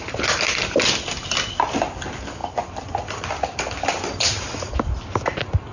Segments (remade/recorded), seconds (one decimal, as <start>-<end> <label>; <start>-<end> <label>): 0.0-5.7 recorded